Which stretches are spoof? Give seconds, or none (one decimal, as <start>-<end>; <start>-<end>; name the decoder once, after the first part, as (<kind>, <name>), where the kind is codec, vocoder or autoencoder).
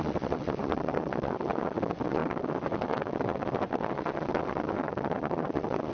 0.0-5.9 (vocoder, WaveNeXt)